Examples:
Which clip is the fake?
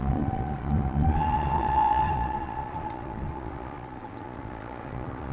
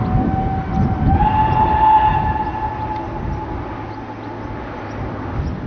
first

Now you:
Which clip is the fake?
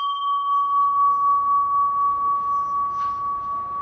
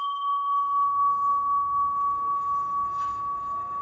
second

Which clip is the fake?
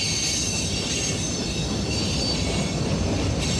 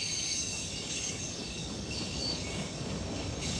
second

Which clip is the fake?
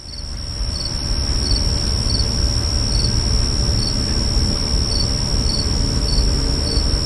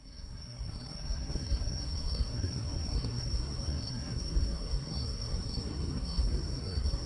second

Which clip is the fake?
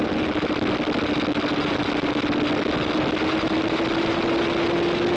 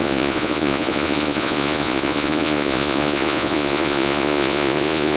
second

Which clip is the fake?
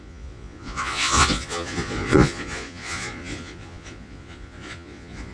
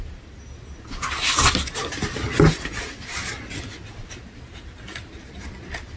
first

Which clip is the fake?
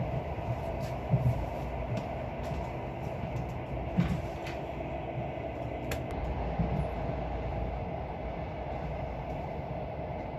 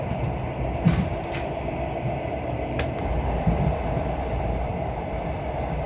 second